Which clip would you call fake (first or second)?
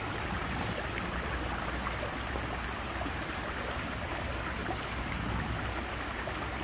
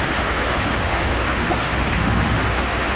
second